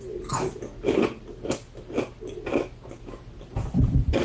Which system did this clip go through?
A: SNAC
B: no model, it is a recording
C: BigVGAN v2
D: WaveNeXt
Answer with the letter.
B